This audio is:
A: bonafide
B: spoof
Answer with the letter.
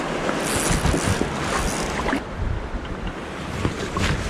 A